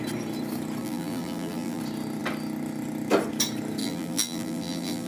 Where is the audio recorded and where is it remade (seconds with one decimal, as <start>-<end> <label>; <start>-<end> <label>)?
0.0-0.8 recorded; 0.8-1.8 remade; 1.8-3.8 recorded; 3.8-5.1 remade